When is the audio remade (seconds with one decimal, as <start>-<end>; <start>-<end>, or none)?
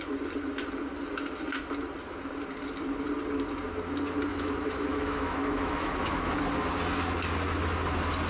4.3-6.3